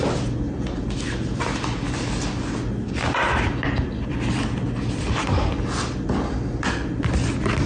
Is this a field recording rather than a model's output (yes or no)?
yes